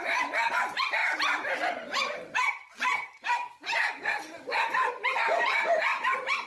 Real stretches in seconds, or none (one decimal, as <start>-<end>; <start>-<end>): 0.0-6.5